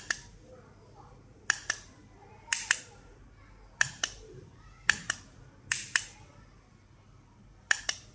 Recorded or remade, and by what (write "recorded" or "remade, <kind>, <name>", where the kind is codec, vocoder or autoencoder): recorded